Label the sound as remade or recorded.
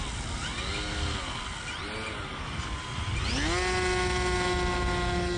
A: recorded